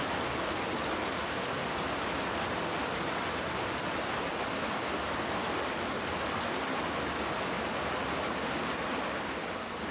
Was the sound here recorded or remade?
recorded